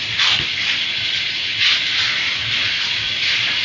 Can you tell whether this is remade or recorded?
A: recorded